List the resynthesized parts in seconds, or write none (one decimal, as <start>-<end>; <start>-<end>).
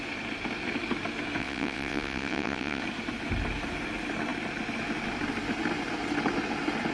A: 1.4-2.8